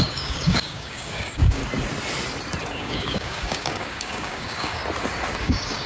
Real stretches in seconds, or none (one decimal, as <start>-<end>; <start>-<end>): 1.6-2.7; 4.8-5.4